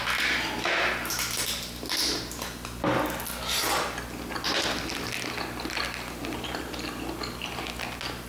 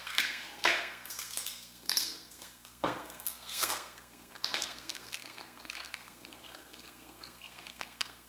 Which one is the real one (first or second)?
first